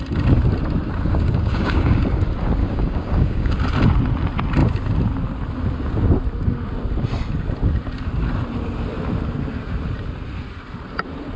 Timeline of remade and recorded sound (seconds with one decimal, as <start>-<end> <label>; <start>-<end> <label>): 0.0-1.1 recorded; 1.1-2.0 remade; 2.0-2.6 recorded; 2.6-3.5 remade; 3.5-11.4 recorded